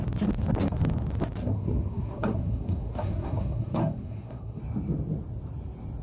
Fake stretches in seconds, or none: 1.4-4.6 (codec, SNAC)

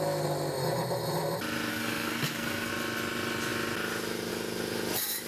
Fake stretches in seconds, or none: 1.7-2.7 (codec, SNAC)

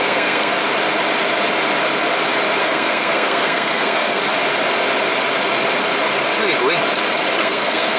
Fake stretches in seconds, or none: 0.0-0.6 (codec, SNAC); 2.6-4.2; 7.4-8.0